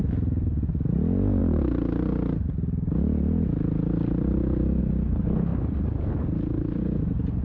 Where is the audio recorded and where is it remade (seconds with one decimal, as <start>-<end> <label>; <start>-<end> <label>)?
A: 0.0-7.4 recorded